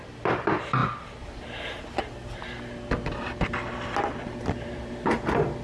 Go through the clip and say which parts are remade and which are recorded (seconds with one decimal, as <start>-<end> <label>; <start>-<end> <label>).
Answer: 0.0-5.6 recorded